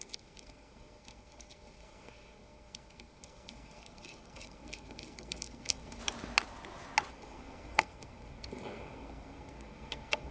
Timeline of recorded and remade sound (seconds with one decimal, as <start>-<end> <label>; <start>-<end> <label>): 0.0-6.0 remade; 6.0-7.1 recorded; 7.1-10.3 remade